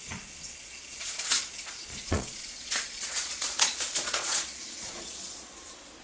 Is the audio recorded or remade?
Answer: remade